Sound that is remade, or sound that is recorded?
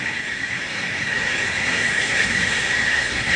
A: remade